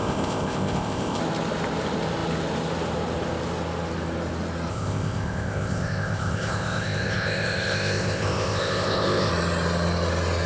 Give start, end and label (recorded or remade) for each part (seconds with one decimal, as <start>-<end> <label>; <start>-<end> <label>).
0.0-1.2 remade; 1.2-4.7 recorded; 4.7-9.3 remade; 9.3-10.5 recorded